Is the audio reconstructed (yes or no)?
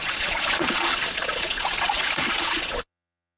yes